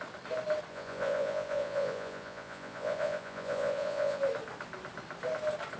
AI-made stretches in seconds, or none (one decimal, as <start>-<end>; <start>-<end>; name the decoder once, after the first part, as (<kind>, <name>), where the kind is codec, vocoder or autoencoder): 0.7-4.2 (vocoder, Vocos)